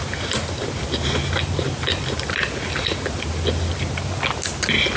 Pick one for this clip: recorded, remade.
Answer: recorded